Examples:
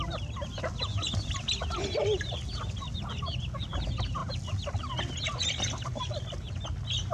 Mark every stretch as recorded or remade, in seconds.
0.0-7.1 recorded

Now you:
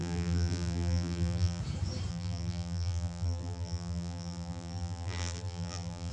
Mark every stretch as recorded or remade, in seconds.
0.0-1.6 remade; 1.6-2.1 recorded; 2.1-6.1 remade

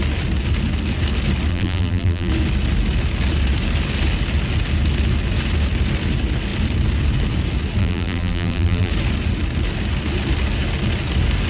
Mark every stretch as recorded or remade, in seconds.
0.0-1.5 recorded; 1.5-2.3 remade; 2.3-7.8 recorded; 7.8-8.9 remade; 8.9-11.5 recorded

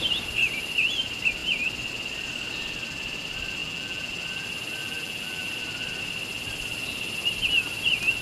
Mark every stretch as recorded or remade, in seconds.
0.0-3.6 recorded; 3.6-4.1 remade; 4.1-4.8 recorded; 4.8-5.5 remade; 5.5-8.2 recorded

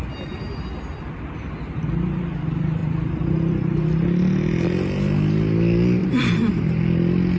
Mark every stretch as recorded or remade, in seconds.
0.0-2.8 recorded; 2.8-3.3 remade; 3.3-6.0 recorded; 6.0-6.8 remade; 6.8-7.4 recorded

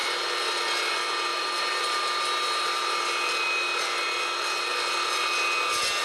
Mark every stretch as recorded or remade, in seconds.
0.0-1.3 recorded; 1.3-1.8 remade; 1.8-6.0 recorded